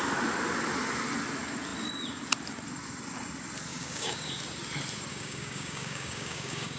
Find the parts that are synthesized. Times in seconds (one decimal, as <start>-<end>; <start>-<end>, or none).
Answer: 3.7-4.3; 5.1-6.8